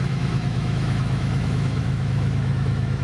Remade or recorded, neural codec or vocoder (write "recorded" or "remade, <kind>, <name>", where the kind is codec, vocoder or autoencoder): remade, autoencoder, DAC-VAE